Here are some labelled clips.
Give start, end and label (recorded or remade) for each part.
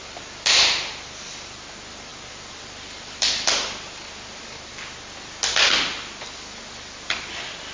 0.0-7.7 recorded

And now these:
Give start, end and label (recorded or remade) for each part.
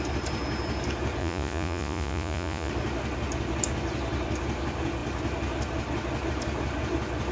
0.0-1.2 recorded; 1.2-2.7 remade; 2.7-7.3 recorded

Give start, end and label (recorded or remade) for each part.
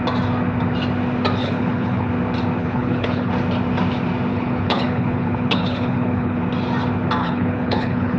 0.0-1.4 recorded; 1.4-2.1 remade; 2.1-2.6 recorded; 2.6-3.3 remade; 3.3-4.3 recorded; 4.3-6.4 remade; 6.4-7.2 recorded; 7.2-8.2 remade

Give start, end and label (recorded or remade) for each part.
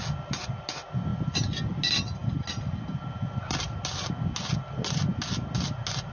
0.0-6.1 recorded